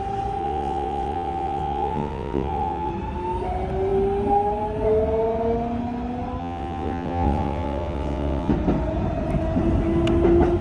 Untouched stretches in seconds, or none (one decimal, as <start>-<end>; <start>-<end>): 0.0-0.4; 2.9-6.4; 8.5-10.6